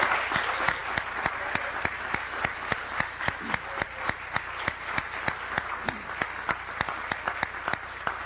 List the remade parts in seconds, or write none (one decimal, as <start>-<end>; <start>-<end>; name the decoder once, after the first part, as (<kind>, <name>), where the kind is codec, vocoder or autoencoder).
none